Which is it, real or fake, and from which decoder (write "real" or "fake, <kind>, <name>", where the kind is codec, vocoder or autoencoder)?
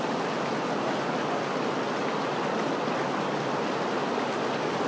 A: real